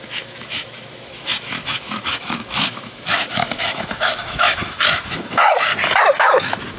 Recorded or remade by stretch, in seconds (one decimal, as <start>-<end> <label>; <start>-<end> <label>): 0.0-5.7 remade; 5.7-6.2 recorded; 6.2-6.8 remade